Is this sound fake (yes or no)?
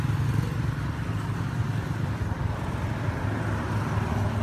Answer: no